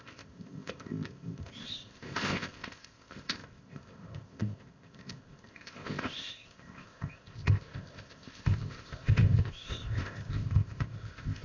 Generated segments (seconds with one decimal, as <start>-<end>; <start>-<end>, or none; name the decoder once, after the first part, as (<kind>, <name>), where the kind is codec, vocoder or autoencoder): 0.0-11.4 (codec, ZipCodec)